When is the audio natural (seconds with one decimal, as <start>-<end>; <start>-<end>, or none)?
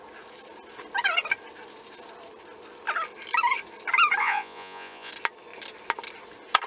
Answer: 0.0-4.2; 5.1-6.7